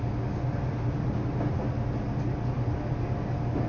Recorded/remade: recorded